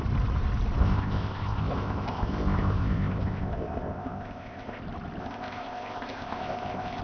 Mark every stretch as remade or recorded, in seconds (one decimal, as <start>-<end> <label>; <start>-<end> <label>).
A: 0.0-0.8 recorded; 0.8-4.8 remade; 4.8-5.2 recorded; 5.2-7.0 remade